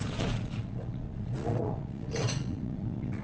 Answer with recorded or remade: remade